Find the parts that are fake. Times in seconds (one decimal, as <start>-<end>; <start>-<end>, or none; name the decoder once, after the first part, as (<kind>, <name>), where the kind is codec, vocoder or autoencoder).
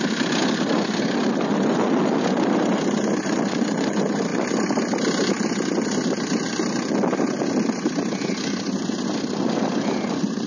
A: none